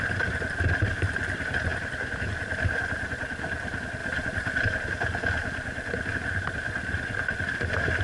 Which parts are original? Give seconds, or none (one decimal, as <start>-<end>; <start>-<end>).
0.0-4.0; 4.6-8.0

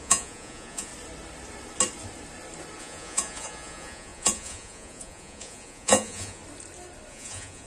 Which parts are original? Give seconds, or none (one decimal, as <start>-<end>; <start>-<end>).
0.9-2.8; 6.4-7.1